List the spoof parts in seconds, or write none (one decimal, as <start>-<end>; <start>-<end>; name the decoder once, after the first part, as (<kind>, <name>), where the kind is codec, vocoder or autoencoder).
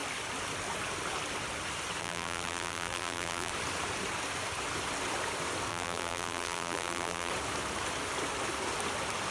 2.0-3.5 (vocoder, BigVGAN v2); 5.7-7.3